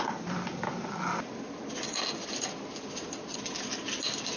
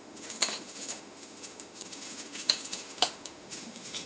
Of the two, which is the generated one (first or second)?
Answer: second